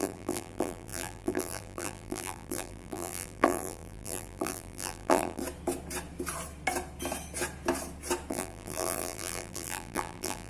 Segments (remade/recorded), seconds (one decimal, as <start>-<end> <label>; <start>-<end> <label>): 0.0-5.4 remade; 5.4-8.3 recorded; 8.3-10.5 remade